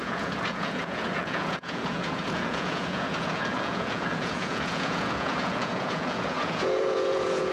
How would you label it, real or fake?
fake